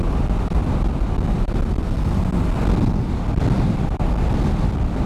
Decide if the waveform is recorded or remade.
recorded